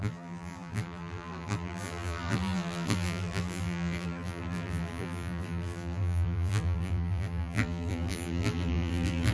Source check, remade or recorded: remade